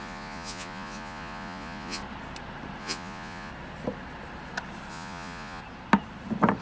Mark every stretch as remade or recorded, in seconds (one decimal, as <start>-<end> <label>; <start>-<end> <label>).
0.0-2.0 remade; 2.0-2.8 recorded; 2.8-3.5 remade; 3.5-4.9 recorded; 4.9-5.6 remade; 5.6-6.6 recorded

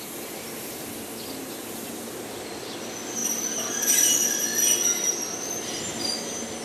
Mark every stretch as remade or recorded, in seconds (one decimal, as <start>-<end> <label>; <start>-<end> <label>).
0.0-6.6 recorded

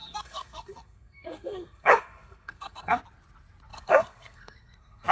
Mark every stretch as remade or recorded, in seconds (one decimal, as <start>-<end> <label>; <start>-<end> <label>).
0.0-3.0 remade; 3.0-3.7 recorded; 3.7-5.1 remade

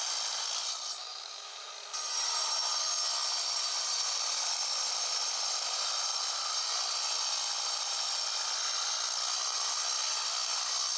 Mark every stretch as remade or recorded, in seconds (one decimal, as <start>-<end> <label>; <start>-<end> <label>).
0.0-1.0 recorded; 1.0-1.7 remade; 1.7-11.0 recorded

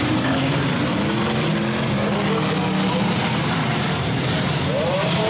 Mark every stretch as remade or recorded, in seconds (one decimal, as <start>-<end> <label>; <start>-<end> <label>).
0.0-1.5 remade; 1.5-2.9 recorded; 2.9-5.3 remade

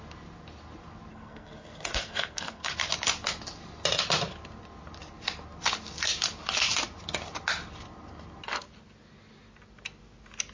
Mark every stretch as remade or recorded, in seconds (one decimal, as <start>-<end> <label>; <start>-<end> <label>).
0.0-1.1 recorded; 1.1-2.7 remade; 2.7-10.5 recorded

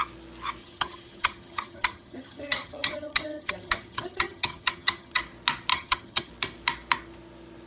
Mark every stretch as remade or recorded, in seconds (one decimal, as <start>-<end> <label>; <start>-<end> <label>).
0.0-0.6 recorded; 0.6-5.2 remade; 5.2-5.7 recorded; 5.7-6.3 remade; 6.3-7.7 recorded